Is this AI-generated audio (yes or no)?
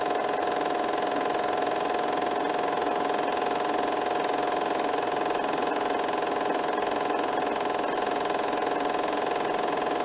no